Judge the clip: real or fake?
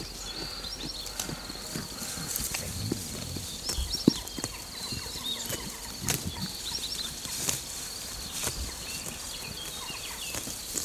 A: real